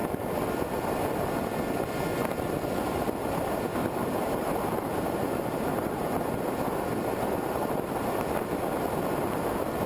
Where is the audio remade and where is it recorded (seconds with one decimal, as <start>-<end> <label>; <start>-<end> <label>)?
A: 0.0-3.8 recorded; 3.8-6.2 remade; 6.2-9.9 recorded